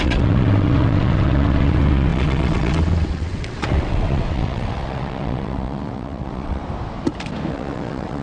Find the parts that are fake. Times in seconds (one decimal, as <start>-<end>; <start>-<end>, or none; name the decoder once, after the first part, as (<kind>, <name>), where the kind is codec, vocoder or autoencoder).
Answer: 0.0-6.6 (vocoder, WaveNeXt); 7.5-8.2